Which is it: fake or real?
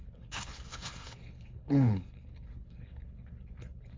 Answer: fake